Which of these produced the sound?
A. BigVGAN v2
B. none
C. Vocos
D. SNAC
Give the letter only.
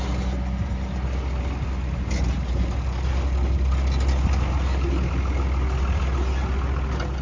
B